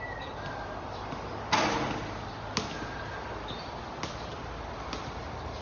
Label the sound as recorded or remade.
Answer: recorded